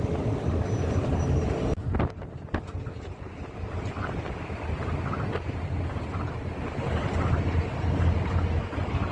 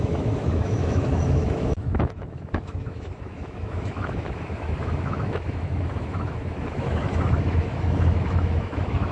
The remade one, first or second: second